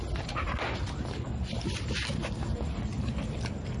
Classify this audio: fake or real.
real